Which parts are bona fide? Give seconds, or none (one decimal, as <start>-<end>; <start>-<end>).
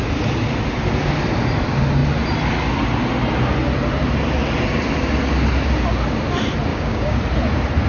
0.0-6.7; 7.2-7.9